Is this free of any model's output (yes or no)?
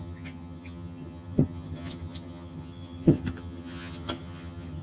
no